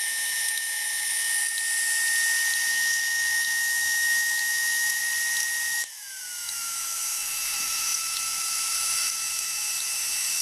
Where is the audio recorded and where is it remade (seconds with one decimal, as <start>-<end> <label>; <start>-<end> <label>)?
0.0-1.4 remade; 1.4-2.7 recorded; 2.7-5.0 remade; 5.0-5.7 recorded; 5.7-10.4 remade